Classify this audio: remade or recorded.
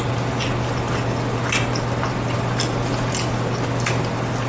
recorded